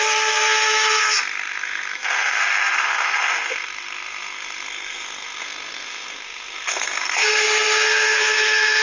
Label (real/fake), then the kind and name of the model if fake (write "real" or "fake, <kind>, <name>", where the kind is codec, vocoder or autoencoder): fake, codec, SNAC